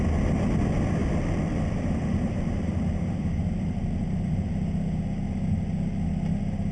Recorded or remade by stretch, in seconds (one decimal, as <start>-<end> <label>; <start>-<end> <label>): 0.0-1.0 recorded; 1.0-4.5 remade; 4.5-6.7 recorded